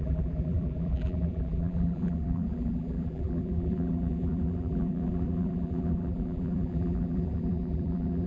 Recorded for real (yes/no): no